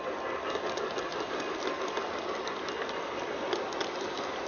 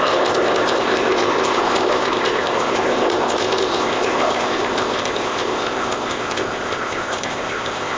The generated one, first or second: second